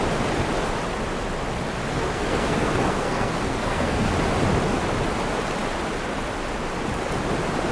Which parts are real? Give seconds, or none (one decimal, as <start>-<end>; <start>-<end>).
0.0-1.9; 4.1-7.7